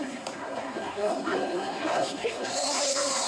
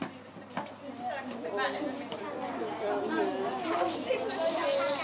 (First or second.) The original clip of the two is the second